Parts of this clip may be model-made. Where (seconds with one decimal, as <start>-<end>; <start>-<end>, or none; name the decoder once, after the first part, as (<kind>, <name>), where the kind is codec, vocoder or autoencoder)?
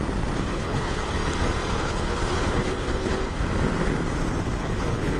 0.5-1.0 (codec, HILCodec); 1.7-3.4; 4.6-5.2